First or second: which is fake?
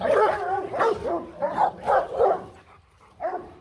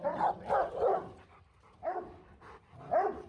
first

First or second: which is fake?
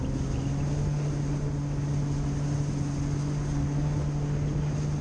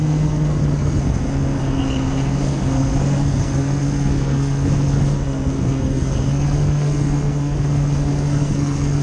second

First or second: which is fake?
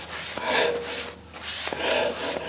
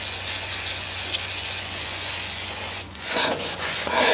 second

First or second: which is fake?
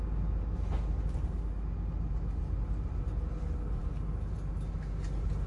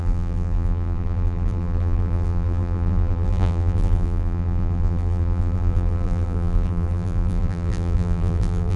second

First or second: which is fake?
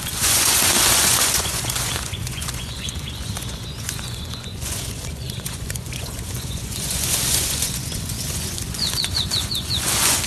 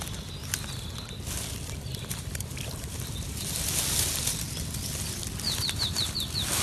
first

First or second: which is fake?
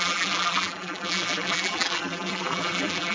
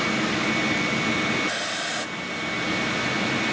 first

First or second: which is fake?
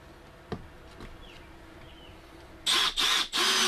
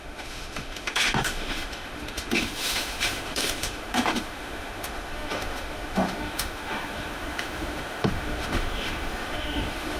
second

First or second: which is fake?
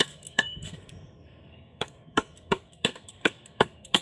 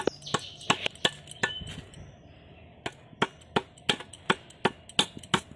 first